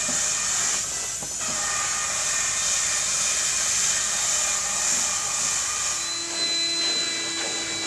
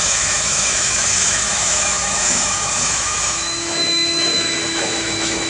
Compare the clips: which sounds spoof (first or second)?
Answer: second